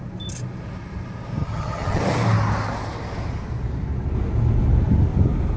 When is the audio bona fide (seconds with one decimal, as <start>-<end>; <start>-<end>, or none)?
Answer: 0.0-1.4; 2.0-5.6